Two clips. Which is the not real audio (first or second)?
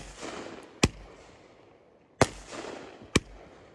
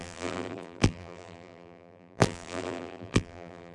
second